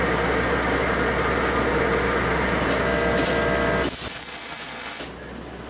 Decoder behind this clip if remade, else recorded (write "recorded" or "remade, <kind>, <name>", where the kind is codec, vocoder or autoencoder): recorded